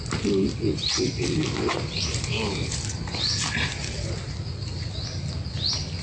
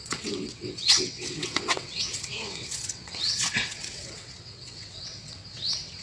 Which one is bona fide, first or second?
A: first